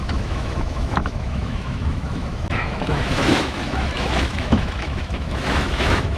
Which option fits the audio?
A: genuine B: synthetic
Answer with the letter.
B